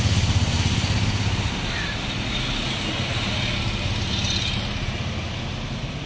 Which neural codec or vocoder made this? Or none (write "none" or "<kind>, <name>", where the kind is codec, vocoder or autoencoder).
none